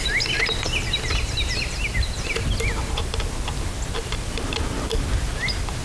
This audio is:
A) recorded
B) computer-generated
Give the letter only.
A